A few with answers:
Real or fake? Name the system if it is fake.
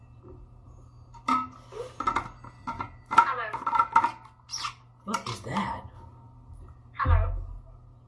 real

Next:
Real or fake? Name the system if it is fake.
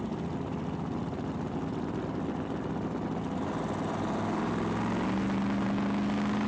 real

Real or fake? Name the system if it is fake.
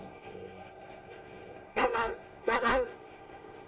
fake, codec, SNAC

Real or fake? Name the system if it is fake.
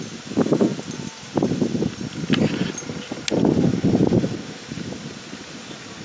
real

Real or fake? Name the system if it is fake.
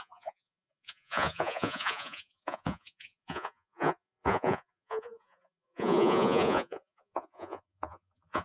fake, vocoder, Vocos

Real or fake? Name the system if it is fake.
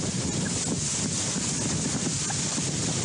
real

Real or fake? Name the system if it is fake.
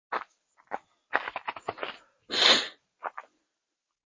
real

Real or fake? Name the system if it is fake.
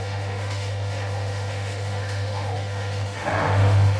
fake, autoencoder, DAC-VAE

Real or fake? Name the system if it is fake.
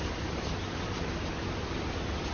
real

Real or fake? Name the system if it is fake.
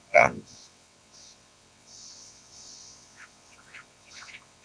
fake, vocoder, WaveNeXt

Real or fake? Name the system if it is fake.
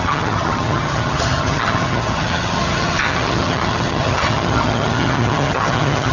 fake, vocoder, HiFi-GAN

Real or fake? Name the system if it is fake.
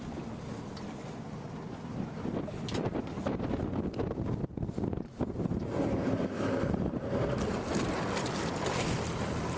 real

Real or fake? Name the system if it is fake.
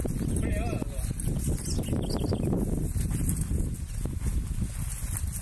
real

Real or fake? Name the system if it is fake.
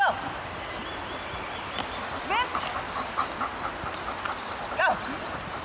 real